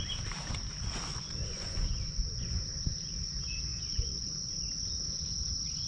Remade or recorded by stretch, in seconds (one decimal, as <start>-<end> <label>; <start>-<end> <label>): 0.0-1.1 recorded; 1.1-2.6 remade; 2.6-3.7 recorded; 3.7-4.5 remade; 4.5-5.9 recorded